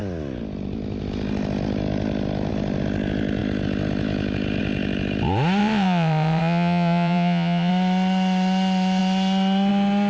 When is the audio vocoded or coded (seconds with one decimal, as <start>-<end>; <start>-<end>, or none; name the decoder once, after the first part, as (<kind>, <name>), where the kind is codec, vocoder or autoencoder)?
5.6-7.7 (vocoder, Vocos)